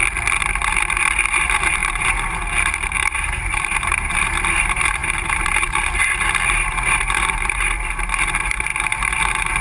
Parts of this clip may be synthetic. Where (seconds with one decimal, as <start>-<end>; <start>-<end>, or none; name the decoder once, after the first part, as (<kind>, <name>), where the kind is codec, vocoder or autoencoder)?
1.4-9.6 (vocoder, BigVGAN v2)